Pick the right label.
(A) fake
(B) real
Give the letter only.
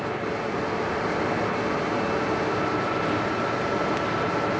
B